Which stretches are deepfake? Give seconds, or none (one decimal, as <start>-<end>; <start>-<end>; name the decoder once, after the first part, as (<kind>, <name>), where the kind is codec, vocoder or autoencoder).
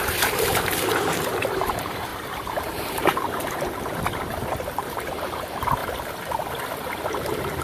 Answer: 0.0-5.8 (vocoder, BigVGAN v2); 7.1-7.6